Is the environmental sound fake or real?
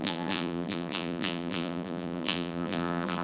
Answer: fake